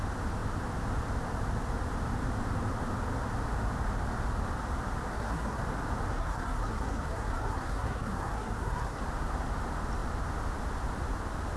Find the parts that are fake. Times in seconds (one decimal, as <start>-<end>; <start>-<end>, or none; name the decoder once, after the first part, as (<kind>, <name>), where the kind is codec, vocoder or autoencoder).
5.1-5.6 (codec, SNAC); 6.1-9.0